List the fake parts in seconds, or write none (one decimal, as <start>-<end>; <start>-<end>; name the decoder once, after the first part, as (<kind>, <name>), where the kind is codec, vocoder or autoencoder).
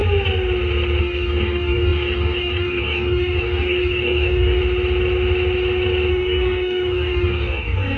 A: 1.0-4.6 (codec, DAC); 6.1-8.0